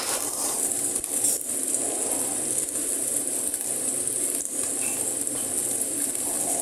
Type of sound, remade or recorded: recorded